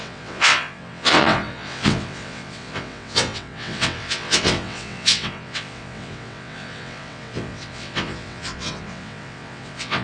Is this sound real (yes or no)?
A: no